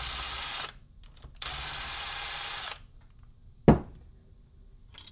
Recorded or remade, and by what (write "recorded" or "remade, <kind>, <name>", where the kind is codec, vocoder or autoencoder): recorded